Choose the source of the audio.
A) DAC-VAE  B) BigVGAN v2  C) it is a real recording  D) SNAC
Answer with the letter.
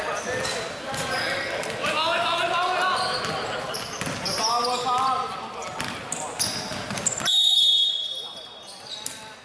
C